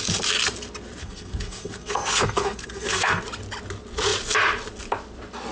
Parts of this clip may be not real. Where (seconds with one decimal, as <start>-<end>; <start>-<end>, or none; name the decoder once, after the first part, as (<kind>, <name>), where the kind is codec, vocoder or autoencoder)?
1.0-3.2 (codec, SNAC)